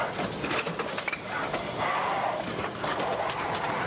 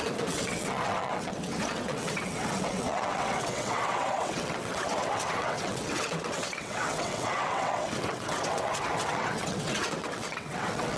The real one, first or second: first